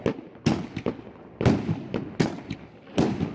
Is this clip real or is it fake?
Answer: real